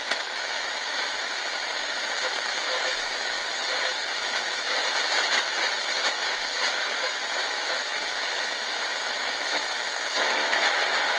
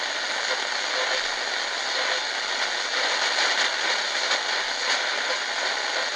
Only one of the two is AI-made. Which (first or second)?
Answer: first